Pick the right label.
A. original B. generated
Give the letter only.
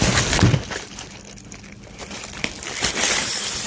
A